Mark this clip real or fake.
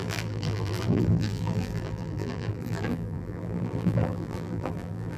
fake